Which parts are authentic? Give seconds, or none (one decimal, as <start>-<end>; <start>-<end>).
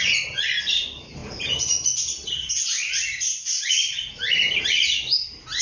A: 0.0-5.6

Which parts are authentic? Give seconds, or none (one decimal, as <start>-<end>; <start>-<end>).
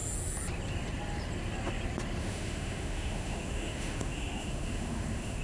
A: 0.0-2.2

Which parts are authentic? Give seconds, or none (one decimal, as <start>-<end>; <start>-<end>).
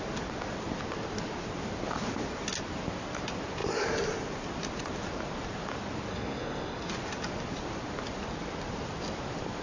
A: 0.0-6.1; 6.9-9.6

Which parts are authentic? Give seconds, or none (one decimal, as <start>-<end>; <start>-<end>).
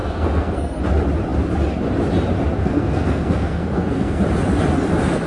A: 0.8-2.6; 4.2-5.3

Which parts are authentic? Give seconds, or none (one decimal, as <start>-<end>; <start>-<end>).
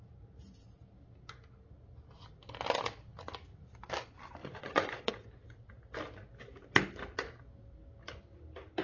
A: 0.0-4.4; 5.1-8.8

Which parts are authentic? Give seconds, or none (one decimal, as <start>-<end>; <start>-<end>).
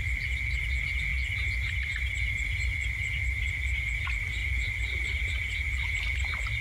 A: 0.0-6.6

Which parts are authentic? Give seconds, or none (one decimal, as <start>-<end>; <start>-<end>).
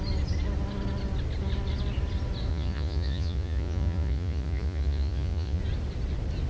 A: 0.0-2.5; 5.6-6.5